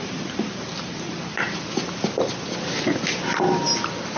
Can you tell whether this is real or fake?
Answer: real